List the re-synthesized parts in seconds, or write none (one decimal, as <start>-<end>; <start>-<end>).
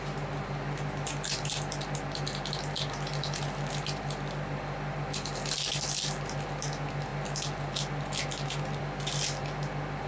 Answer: none